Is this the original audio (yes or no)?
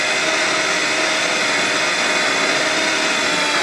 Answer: yes